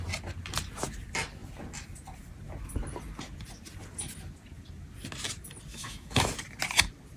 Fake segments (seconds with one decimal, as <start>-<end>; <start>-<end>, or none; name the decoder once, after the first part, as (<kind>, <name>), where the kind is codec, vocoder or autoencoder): 5.7-6.3 (autoencoder, DAC-VAE)